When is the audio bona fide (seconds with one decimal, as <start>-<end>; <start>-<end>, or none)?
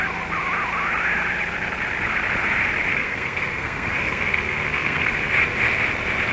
0.0-2.9; 5.3-6.3